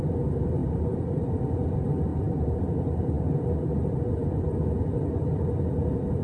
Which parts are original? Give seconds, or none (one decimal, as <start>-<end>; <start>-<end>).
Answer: 0.0-0.6; 1.3-2.1; 3.1-6.2